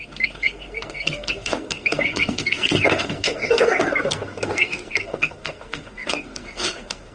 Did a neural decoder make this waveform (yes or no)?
yes